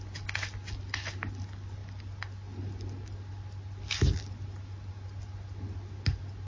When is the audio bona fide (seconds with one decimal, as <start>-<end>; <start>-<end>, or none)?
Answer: 0.0-6.5